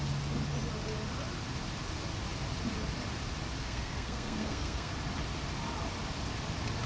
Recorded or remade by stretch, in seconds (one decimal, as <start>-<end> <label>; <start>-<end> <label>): 0.0-3.6 recorded; 3.6-4.9 remade; 4.9-6.9 recorded